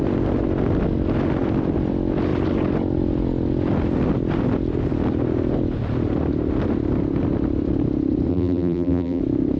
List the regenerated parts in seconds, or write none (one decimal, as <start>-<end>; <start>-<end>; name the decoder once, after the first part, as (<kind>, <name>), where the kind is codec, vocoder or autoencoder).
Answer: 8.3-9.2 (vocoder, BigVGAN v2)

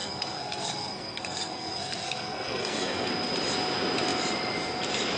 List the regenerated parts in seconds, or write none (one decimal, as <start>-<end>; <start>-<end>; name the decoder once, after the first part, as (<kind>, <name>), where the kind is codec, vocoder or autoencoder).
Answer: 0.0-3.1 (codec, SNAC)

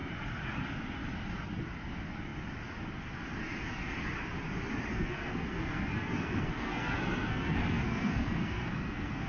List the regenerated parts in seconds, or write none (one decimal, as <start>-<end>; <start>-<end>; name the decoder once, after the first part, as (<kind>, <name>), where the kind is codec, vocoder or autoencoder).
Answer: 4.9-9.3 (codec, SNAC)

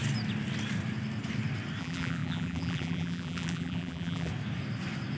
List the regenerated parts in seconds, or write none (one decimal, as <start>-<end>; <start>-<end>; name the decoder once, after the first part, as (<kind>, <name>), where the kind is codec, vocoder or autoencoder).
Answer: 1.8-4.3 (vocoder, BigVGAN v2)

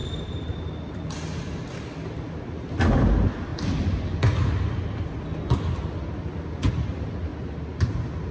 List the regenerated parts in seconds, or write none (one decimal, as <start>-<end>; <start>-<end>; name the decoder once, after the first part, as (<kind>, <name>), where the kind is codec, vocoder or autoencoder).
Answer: 0.0-0.7 (vocoder, BigVGAN v2); 7.3-8.3